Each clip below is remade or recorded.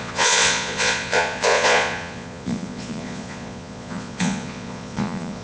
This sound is remade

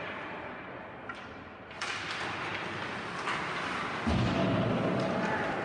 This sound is recorded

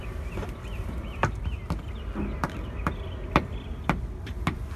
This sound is recorded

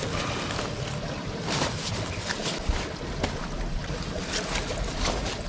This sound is recorded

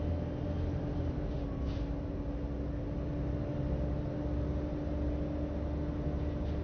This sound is recorded